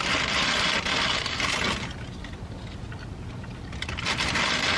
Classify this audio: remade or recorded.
recorded